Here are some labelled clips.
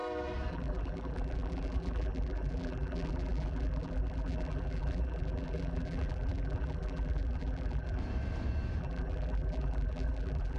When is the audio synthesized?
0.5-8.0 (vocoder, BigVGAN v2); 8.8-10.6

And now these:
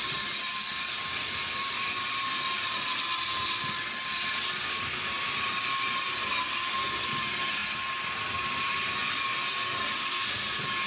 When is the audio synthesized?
none

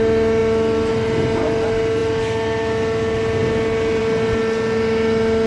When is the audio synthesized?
none

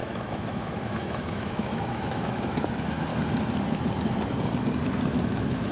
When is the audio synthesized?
0.0-3.1 (autoencoder, DAC-VAE); 5.2-5.7